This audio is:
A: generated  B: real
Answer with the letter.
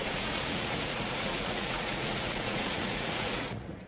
A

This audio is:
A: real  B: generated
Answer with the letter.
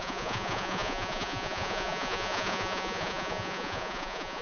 B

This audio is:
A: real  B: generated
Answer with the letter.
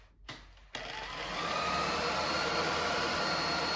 A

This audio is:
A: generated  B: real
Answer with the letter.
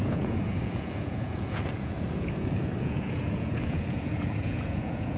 A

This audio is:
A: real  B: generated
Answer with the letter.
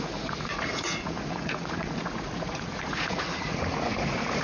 B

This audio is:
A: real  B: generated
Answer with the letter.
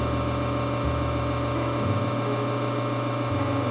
A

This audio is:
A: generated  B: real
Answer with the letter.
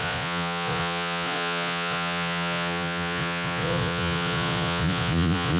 A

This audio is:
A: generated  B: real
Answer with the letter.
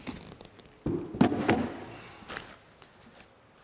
B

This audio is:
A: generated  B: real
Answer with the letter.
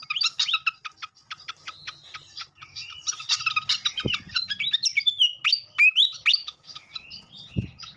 B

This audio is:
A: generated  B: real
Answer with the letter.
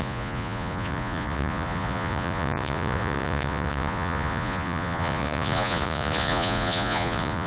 A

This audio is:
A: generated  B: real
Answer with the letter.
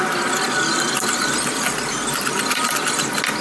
B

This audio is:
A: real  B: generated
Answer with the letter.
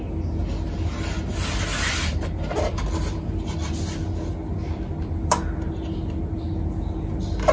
A